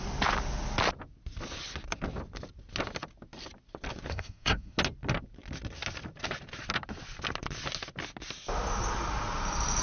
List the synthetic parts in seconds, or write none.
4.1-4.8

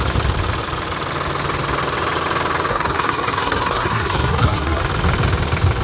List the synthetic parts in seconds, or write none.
2.7-4.8

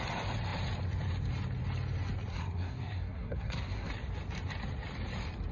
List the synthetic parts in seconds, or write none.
2.3-3.9